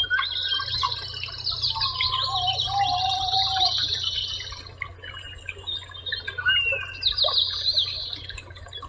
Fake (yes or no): no